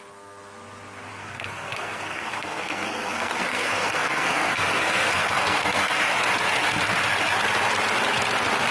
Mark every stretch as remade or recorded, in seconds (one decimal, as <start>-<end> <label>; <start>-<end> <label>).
0.0-1.1 recorded; 1.1-6.0 remade; 6.0-8.7 recorded